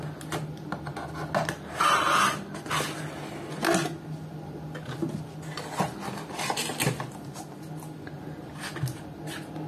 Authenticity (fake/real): real